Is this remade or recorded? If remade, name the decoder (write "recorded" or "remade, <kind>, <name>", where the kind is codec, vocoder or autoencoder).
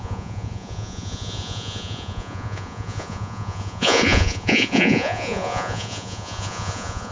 remade, vocoder, Vocos